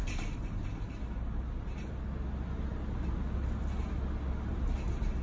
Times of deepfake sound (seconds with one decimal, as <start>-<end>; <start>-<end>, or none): none